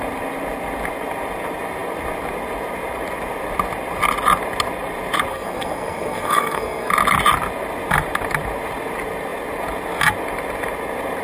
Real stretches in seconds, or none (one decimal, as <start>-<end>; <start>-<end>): 0.0-5.3; 6.9-11.2

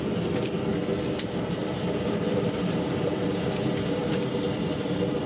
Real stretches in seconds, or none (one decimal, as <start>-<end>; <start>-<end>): 0.0-5.3

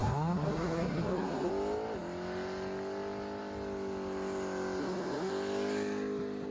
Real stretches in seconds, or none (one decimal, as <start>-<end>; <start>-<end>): 1.5-4.8; 5.3-6.5

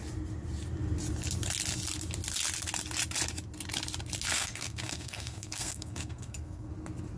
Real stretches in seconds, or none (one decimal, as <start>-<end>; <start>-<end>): 0.0-4.3; 6.7-7.2

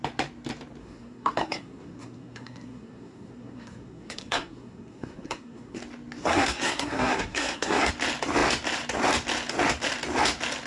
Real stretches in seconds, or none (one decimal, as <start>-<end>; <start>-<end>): 0.0-0.8; 5.8-6.2; 7.9-10.7

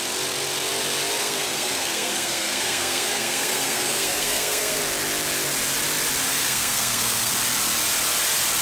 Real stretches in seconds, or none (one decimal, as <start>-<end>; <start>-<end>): 0.0-1.2; 4.8-6.3; 7.3-8.6

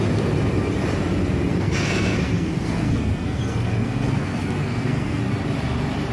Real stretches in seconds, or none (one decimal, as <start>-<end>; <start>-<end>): 0.0-1.5; 5.2-6.1